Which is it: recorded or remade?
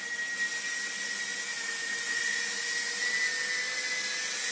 recorded